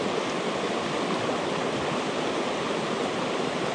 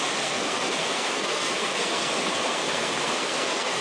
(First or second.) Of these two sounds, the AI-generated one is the second